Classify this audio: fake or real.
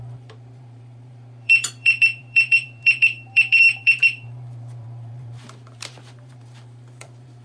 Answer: fake